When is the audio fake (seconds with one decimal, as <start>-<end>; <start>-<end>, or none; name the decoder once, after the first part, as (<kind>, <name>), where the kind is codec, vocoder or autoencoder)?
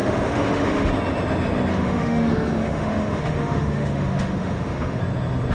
0.0-0.9 (autoencoder, DAC-VAE); 1.7-5.0